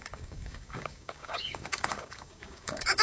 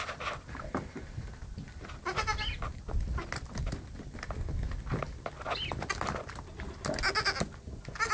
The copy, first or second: first